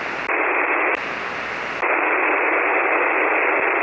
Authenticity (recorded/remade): recorded